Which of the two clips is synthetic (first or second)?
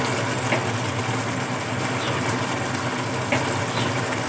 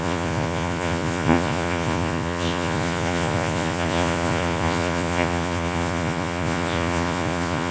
second